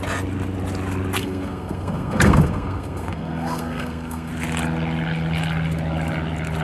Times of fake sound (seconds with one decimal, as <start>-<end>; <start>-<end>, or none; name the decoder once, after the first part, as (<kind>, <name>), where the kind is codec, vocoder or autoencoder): 1.2-4.3 (codec, SNAC)